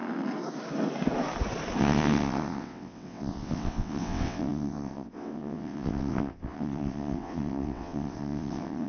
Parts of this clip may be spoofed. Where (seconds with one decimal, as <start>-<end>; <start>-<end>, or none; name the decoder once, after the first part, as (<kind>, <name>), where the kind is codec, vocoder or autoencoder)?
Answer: 1.8-8.9 (vocoder, WaveNeXt)